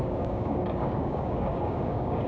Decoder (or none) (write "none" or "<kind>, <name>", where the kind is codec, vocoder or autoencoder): codec, DAC